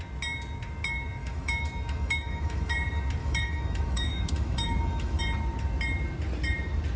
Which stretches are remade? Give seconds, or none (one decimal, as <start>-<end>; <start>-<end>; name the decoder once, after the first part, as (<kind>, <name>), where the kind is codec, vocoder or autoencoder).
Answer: 1.2-2.7 (autoencoder, DAC-VAE); 3.2-5.2

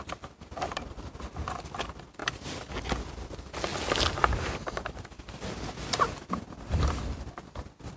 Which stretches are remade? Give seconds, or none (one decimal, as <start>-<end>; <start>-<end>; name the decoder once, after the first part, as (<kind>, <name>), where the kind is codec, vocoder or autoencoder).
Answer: none

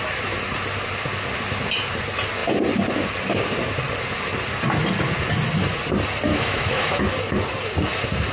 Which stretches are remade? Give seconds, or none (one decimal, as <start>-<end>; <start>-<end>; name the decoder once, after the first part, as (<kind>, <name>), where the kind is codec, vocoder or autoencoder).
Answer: 6.3-7.0 (autoencoder, DAC-VAE)

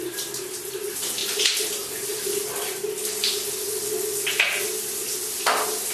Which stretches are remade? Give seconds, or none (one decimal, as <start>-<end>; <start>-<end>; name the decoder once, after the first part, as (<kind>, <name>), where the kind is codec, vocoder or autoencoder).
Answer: none